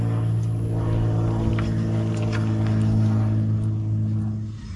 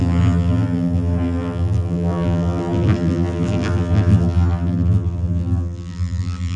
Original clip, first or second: first